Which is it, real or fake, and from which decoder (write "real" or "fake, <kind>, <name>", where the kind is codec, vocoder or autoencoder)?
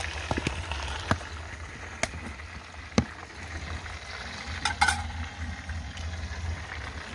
real